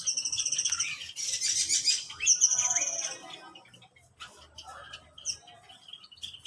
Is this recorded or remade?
recorded